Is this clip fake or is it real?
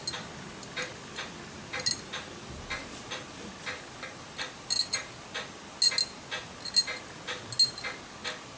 real